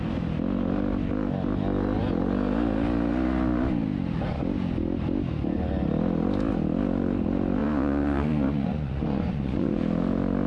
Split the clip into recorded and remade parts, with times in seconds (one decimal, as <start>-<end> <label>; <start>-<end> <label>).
0.0-7.6 recorded; 7.6-9.8 remade; 9.8-10.5 recorded